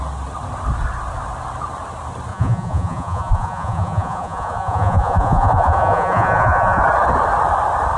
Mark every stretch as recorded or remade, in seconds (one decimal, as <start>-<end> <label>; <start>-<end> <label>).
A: 0.0-2.3 recorded; 2.3-6.8 remade; 6.8-8.0 recorded